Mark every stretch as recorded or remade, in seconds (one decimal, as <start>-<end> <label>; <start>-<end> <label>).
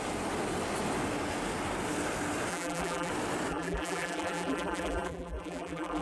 0.0-2.5 recorded; 2.5-3.1 remade; 3.1-3.5 recorded; 3.5-6.0 remade